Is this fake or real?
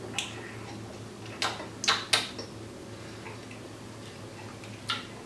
real